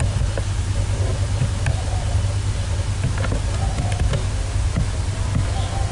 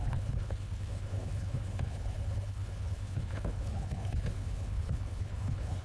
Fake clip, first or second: second